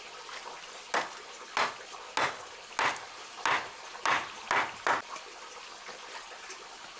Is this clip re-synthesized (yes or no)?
no